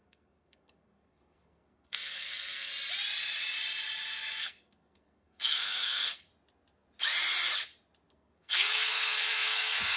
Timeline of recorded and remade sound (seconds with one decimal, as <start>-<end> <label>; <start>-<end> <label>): 0.0-2.7 remade; 2.7-4.4 recorded; 4.4-6.3 remade; 6.3-8.1 recorded; 8.1-10.0 remade